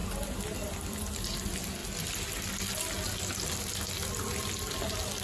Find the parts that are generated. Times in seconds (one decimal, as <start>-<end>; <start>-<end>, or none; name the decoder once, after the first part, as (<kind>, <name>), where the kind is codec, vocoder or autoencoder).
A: none